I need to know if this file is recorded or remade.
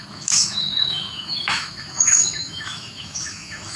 remade